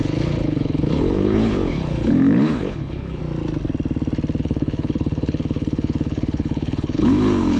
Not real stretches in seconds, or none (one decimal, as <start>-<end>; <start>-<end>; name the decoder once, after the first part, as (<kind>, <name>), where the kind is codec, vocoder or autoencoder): 0.0-3.2 (codec, HILCodec); 4.4-7.6